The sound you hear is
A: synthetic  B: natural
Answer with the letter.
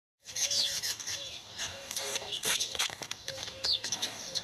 A